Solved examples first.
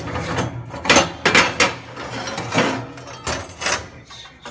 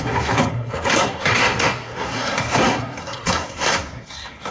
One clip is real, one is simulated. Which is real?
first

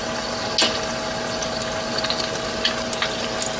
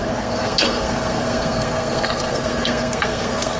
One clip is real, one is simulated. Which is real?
first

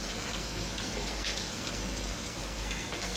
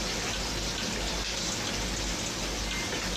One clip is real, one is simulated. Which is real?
second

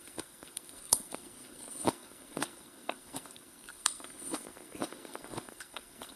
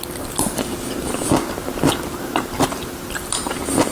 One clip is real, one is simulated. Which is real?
second